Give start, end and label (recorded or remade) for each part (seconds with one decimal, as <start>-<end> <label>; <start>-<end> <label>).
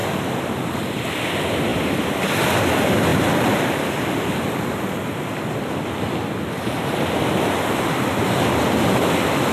0.0-9.5 recorded